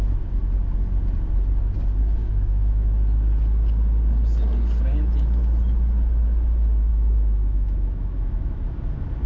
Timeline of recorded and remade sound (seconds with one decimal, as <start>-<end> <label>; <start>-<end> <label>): 0.0-2.2 recorded; 2.2-2.9 remade; 2.9-6.9 recorded; 6.9-8.7 remade; 8.7-9.3 recorded